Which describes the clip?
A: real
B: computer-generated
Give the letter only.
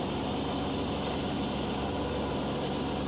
A